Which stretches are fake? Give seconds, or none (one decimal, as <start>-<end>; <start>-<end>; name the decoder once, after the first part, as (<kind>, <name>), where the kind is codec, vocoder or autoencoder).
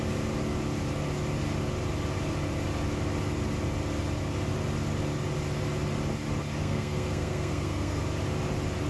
6.6-8.0 (codec, SNAC)